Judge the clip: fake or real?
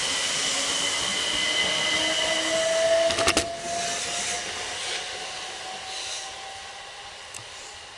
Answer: real